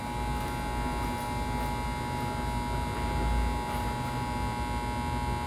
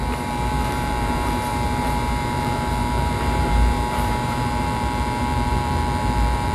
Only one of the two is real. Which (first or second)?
first